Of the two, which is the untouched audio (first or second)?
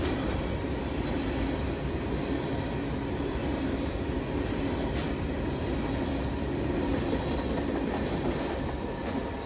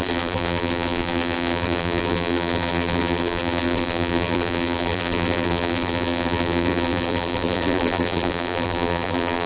first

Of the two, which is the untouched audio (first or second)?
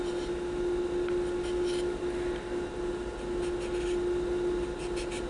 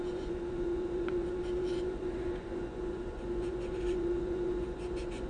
first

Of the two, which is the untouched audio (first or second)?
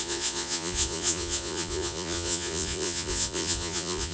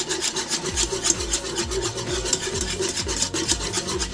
second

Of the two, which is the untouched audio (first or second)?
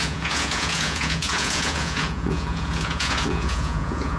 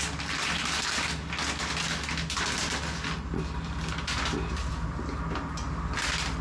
second